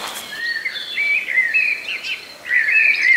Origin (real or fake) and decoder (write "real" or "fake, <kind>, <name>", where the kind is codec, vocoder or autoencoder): real